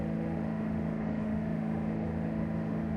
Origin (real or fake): fake